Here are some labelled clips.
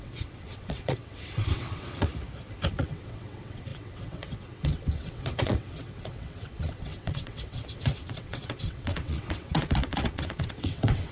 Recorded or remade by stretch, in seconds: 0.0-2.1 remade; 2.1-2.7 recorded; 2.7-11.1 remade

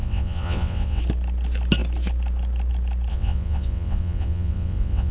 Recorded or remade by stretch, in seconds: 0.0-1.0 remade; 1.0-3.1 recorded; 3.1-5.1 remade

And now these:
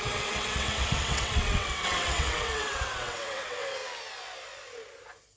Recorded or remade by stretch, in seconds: 0.0-3.8 remade; 3.8-5.4 recorded

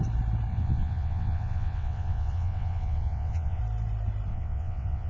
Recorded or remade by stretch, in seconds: 0.0-0.5 recorded; 0.5-3.6 remade; 3.6-4.3 recorded; 4.3-5.1 remade

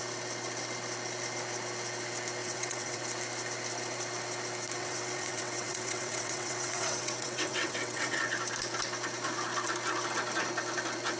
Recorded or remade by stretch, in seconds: 0.0-2.4 recorded; 2.4-3.0 remade; 3.0-4.8 recorded; 4.8-8.2 remade; 8.2-11.2 recorded

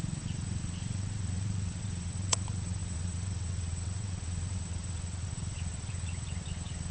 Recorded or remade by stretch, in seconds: 0.0-6.9 remade